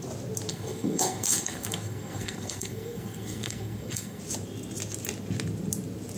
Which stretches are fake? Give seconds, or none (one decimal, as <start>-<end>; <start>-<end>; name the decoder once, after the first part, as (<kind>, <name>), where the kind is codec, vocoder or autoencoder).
0.5-4.2 (codec, SNAC)